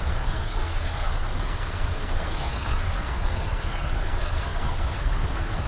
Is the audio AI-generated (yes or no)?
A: yes